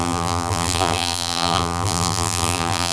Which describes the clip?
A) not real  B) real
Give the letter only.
A